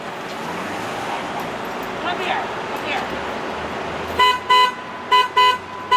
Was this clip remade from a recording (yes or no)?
no